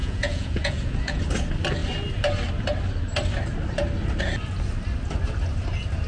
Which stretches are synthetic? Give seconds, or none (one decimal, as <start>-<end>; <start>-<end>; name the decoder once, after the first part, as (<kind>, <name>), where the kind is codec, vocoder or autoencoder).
0.0-1.2 (vocoder, Vocos)